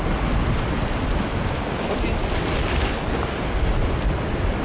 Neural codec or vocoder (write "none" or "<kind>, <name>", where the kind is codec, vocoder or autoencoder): none